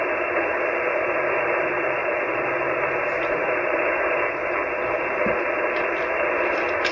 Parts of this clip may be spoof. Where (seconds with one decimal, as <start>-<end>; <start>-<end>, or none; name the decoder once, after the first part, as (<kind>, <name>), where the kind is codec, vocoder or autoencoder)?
none